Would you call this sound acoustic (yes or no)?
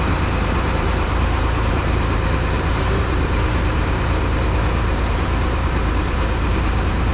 no